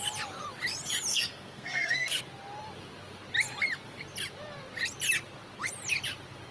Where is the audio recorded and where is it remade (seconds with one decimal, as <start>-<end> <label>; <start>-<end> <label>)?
0.0-1.1 recorded; 1.1-2.2 remade; 2.2-6.5 recorded